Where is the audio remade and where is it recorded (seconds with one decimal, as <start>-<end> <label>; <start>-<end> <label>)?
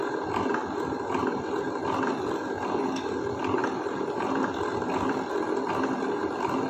0.0-3.6 recorded; 3.6-5.7 remade; 5.7-6.7 recorded